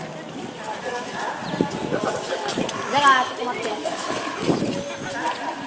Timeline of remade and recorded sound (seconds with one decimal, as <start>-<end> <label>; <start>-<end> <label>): 0.0-0.8 recorded; 0.8-1.3 remade; 1.3-3.7 recorded; 3.7-4.6 remade; 4.6-5.7 recorded